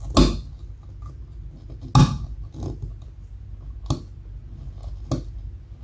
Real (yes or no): yes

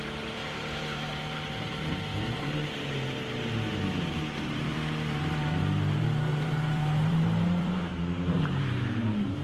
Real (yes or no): no